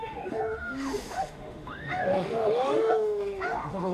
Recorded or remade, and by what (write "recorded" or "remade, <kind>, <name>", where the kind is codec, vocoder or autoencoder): remade, autoencoder, DAC-VAE